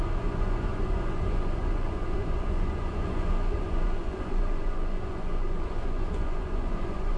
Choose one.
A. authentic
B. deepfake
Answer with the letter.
B